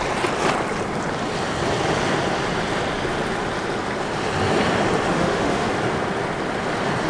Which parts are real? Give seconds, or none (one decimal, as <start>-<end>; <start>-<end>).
0.0-5.1; 5.7-7.1